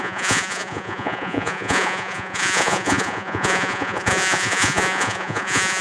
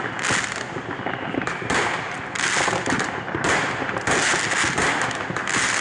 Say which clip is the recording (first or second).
second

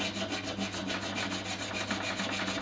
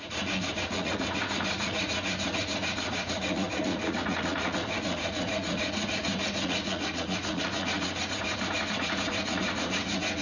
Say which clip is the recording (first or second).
first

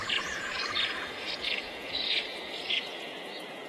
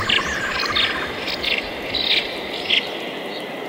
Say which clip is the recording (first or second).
second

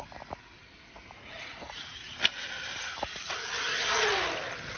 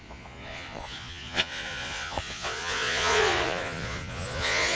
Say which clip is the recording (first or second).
first